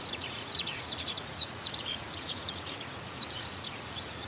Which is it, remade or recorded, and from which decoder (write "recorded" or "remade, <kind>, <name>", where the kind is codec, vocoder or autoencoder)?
remade, vocoder, Vocos